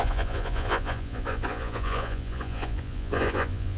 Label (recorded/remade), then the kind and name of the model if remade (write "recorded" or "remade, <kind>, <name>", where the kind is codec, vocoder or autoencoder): remade, vocoder, Vocos